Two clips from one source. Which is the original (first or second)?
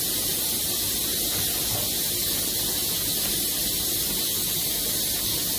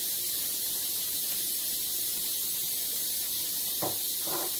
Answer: first